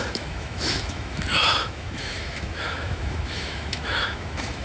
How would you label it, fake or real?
fake